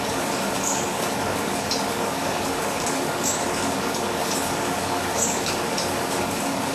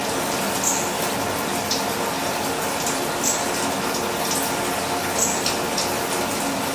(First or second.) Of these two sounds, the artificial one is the first